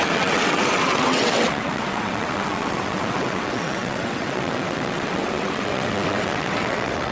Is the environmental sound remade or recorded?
remade